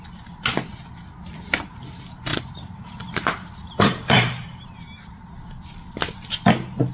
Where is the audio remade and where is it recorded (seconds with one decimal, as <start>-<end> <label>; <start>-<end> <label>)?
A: 0.0-2.3 recorded; 2.3-4.8 remade; 4.8-6.9 recorded